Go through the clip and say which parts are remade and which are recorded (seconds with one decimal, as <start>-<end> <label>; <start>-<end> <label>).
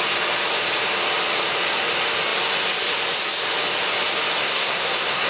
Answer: 0.0-4.4 recorded; 4.4-5.3 remade